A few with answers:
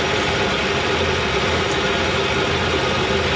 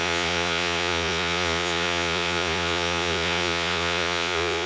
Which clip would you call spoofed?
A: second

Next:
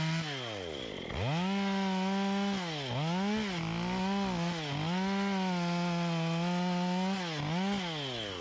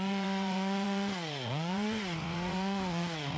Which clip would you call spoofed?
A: second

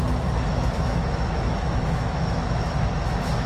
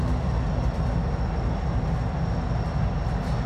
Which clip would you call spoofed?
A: first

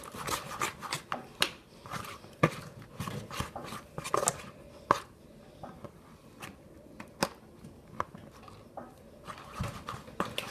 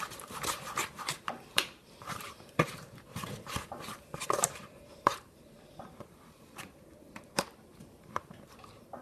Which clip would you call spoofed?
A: second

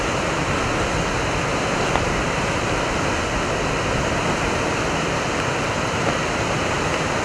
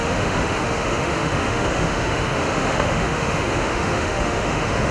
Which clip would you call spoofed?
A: second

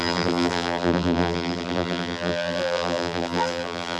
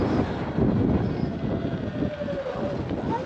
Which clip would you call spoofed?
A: first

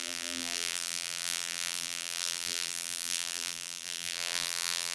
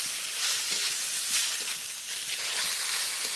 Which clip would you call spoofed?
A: first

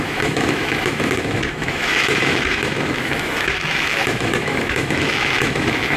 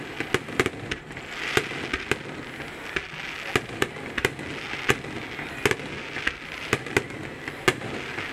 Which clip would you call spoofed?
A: first